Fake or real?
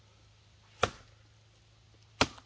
real